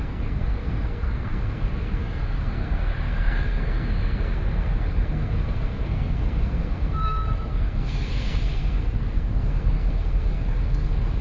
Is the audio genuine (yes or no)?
no